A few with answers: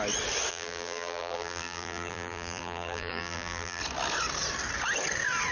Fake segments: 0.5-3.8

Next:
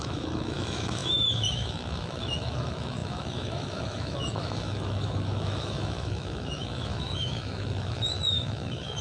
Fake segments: 0.0-9.0

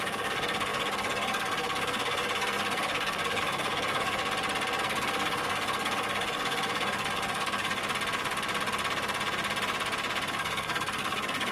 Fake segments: 0.0-4.2; 4.8-7.8; 10.3-11.5